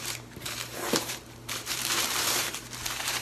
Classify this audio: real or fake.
fake